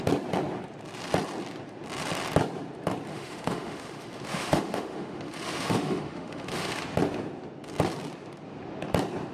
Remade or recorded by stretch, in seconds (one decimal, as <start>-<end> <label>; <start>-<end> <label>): 0.0-3.1 recorded; 3.1-6.8 remade; 6.8-9.3 recorded